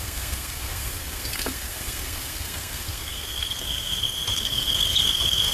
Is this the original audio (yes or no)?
no